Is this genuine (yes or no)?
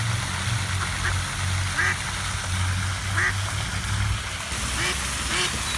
yes